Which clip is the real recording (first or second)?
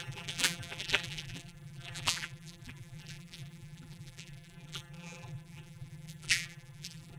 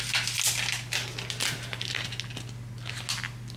second